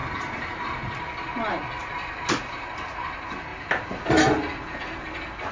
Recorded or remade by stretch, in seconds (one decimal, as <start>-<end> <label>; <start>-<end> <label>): 0.0-0.6 remade; 0.6-1.8 recorded; 1.8-2.9 remade; 2.9-3.5 recorded; 3.5-5.1 remade; 5.1-5.5 recorded